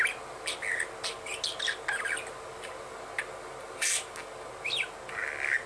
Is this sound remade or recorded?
recorded